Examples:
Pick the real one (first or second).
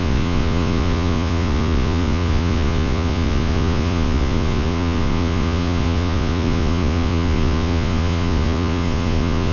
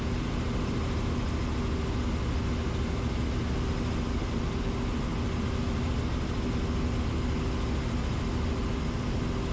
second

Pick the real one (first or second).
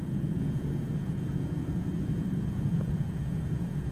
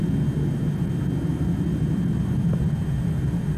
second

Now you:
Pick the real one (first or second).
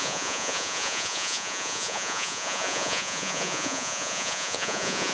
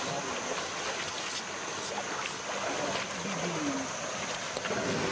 second